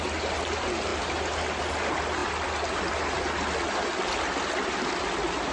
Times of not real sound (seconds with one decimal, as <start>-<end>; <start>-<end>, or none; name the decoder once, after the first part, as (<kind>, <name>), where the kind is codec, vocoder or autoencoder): none